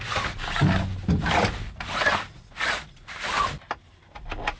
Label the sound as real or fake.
real